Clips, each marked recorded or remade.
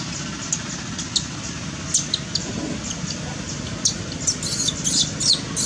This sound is recorded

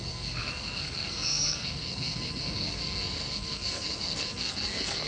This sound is remade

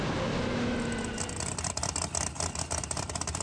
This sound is recorded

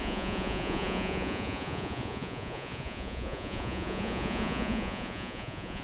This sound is remade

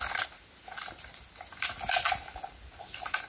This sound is recorded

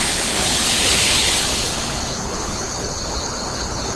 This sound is remade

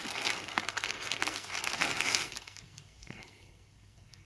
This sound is remade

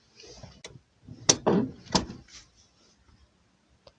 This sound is recorded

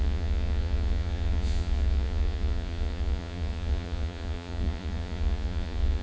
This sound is remade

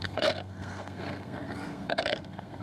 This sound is remade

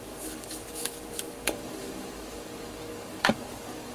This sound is remade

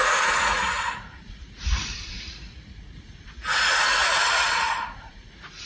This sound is remade